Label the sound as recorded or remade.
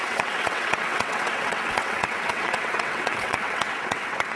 remade